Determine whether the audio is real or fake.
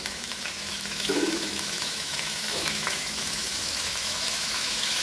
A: fake